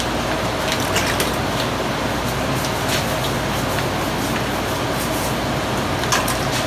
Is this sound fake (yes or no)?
no